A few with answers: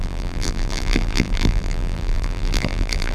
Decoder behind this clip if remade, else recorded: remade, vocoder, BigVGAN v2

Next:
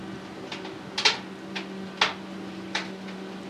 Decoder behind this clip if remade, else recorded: recorded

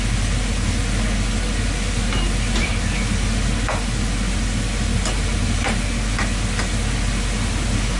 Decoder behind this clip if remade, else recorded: recorded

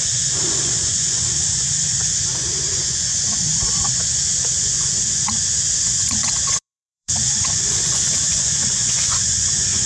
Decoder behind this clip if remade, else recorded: remade, vocoder, Vocos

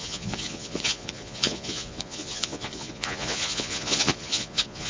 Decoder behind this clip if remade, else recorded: remade, vocoder, Vocos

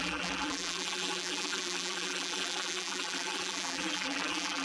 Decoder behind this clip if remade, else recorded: remade, vocoder, BigVGAN v2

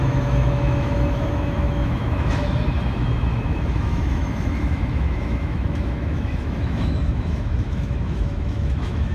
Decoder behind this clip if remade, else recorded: remade, autoencoder, DAC-VAE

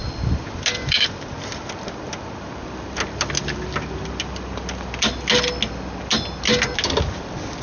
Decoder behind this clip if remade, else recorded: recorded